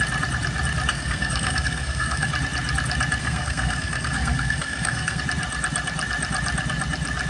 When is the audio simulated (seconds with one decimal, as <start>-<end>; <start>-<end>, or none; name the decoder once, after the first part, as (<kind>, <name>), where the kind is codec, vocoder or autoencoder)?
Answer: 0.9-2.3 (codec, SNAC); 3.2-5.2

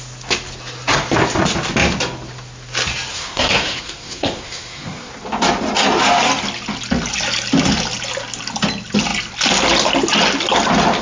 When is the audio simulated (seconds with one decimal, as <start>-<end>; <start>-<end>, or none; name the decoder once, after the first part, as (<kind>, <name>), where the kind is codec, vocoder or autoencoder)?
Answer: 3.1-5.1 (codec, SNAC)

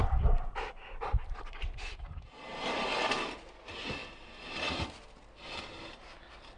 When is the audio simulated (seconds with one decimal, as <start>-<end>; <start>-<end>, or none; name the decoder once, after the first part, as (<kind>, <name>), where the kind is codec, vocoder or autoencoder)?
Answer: 0.0-1.1 (vocoder, BigVGAN v2); 2.5-3.3

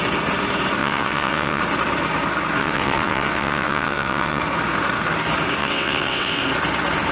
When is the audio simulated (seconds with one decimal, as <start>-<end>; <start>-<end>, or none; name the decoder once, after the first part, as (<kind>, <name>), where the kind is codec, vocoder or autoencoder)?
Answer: 0.8-1.6 (vocoder, WaveNeXt); 2.6-4.4; 5.6-6.4

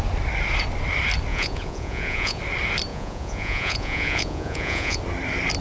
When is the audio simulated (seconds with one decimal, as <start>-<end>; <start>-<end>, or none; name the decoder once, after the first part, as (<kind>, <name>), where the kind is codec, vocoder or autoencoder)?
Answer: 1.3-2.4 (vocoder, Vocos); 2.9-5.0

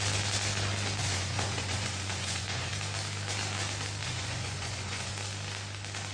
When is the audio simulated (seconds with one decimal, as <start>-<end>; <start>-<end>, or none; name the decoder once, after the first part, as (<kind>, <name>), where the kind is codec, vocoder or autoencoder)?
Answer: 1.0-2.7 (vocoder, Vocos); 4.0-5.1

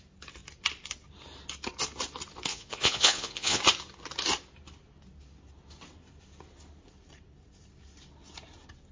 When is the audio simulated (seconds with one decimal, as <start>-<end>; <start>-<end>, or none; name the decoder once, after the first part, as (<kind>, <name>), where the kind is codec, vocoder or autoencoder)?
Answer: 2.5-3.6 (vocoder, Vocos)